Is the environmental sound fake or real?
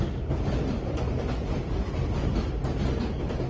real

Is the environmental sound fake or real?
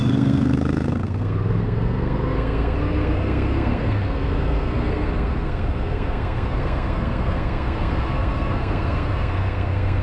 fake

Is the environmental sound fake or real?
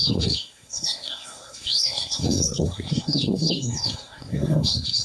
fake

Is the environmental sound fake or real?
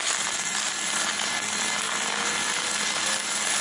real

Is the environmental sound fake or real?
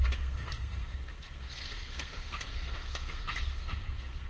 fake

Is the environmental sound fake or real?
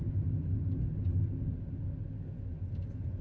real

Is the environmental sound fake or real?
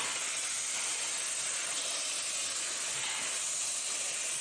real